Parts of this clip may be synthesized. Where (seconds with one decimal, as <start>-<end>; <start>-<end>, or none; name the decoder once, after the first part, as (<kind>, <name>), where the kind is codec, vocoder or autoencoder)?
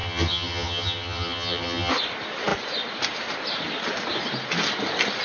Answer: 0.0-1.9 (vocoder, HiFi-GAN)